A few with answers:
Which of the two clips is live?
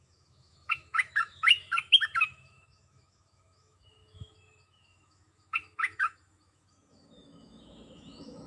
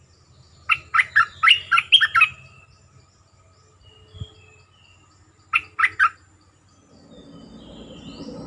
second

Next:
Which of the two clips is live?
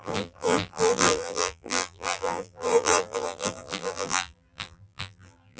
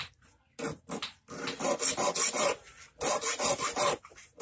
second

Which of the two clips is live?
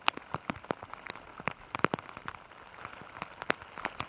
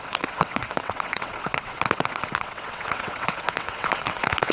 first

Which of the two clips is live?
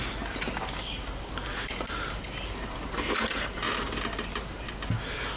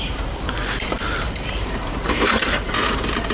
first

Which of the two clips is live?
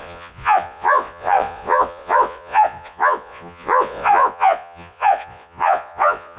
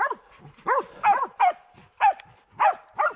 second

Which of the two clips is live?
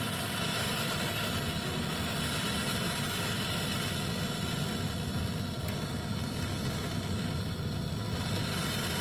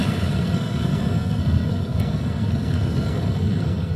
first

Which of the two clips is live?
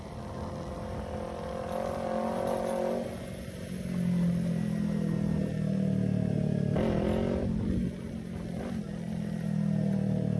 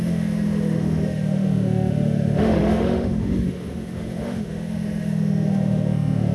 first